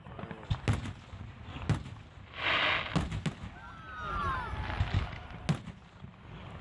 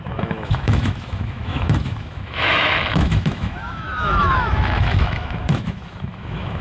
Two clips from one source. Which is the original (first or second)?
first